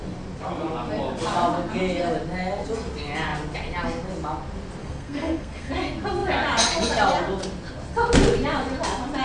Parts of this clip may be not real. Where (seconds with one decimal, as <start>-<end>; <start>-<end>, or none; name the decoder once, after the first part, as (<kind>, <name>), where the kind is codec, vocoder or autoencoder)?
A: 4.8-5.7 (codec, SNAC)